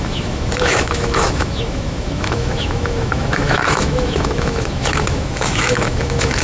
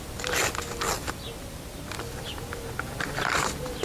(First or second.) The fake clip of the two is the first